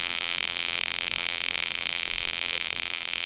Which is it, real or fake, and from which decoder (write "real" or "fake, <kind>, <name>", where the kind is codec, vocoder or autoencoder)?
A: fake, vocoder, BigVGAN v2